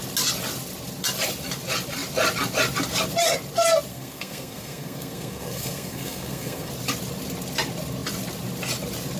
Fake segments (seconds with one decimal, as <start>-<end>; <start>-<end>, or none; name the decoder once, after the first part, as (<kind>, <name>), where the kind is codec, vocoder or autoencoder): 3.9-6.7 (codec, SNAC)